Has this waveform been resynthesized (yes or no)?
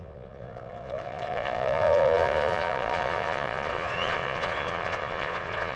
yes